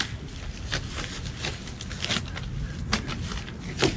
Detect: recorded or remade recorded